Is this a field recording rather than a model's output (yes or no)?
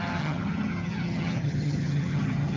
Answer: no